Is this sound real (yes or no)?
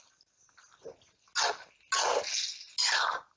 yes